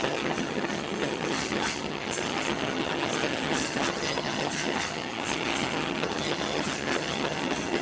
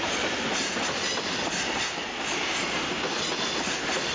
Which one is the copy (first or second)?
first